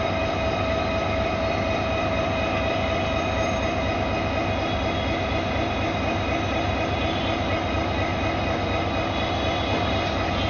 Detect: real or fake real